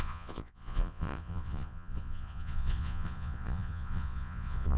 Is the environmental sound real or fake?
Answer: fake